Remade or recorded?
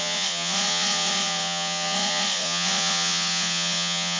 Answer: remade